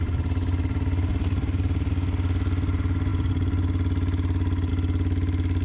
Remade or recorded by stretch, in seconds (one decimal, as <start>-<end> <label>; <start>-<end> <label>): 0.0-1.1 recorded; 1.1-1.9 remade; 1.9-5.6 recorded